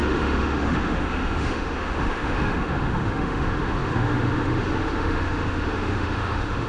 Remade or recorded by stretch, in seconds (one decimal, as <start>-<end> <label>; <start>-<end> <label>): 0.0-6.7 remade